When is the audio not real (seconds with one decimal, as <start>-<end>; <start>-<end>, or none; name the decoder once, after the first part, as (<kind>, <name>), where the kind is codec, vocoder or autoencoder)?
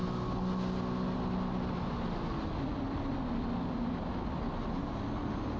none